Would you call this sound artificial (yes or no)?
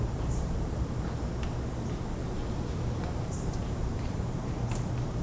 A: yes